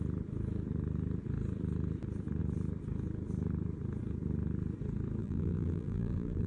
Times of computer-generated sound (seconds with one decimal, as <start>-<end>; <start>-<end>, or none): 5.2-6.5